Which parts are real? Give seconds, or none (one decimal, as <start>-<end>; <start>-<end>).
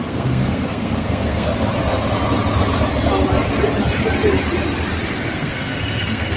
1.5-5.3